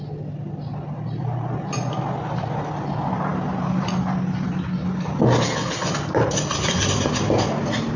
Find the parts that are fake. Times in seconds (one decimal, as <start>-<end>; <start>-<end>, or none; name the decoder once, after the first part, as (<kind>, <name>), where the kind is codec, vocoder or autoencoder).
none